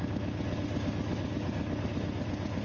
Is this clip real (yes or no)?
yes